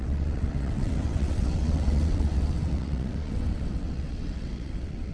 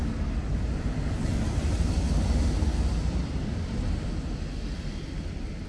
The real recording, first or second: second